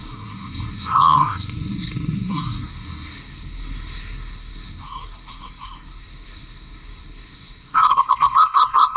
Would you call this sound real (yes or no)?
no